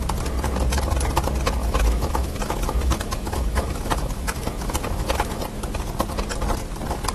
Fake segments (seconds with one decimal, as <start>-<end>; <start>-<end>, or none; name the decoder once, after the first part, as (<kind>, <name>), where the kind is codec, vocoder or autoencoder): 1.6-5.4 (autoencoder, DAC-VAE)